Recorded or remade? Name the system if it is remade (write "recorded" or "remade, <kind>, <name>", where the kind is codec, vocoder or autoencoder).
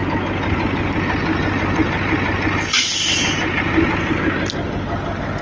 recorded